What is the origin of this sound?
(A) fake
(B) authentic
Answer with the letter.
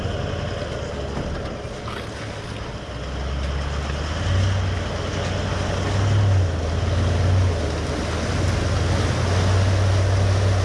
B